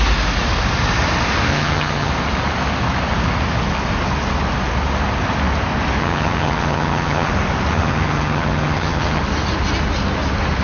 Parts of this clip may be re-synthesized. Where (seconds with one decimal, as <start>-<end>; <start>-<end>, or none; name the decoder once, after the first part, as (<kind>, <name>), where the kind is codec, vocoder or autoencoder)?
1.5-2.1 (vocoder, HiFi-GAN); 6.0-7.3; 7.7-9.2